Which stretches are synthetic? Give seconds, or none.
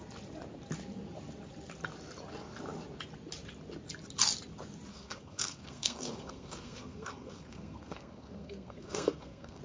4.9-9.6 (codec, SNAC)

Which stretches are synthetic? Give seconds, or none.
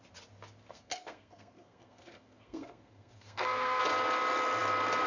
0.7-3.8 (codec, SNAC)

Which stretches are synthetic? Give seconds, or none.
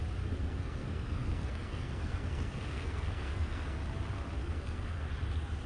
0.4-3.8 (codec, SNAC); 4.4-5.1